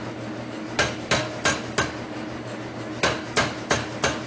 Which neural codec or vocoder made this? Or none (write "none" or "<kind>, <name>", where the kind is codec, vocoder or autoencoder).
none